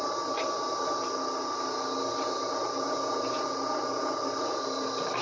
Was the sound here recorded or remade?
recorded